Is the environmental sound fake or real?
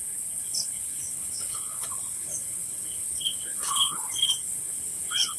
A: fake